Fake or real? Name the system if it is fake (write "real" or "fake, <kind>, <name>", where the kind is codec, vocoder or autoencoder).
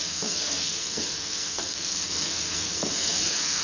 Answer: fake, codec, SNAC